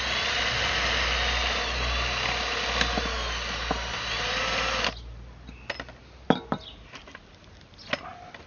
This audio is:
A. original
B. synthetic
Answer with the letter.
A